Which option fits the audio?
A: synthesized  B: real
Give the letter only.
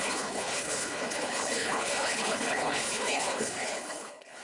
A